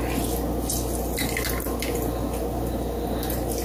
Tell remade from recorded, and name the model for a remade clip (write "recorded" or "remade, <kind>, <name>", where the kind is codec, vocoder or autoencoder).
recorded